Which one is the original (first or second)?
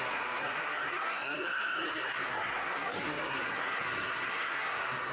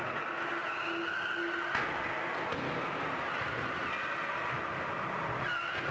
second